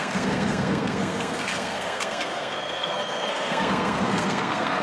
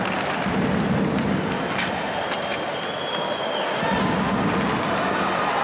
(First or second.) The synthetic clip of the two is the first